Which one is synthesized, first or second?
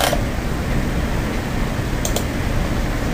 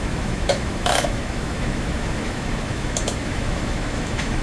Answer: second